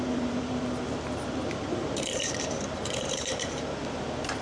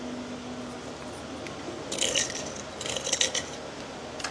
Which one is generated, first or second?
first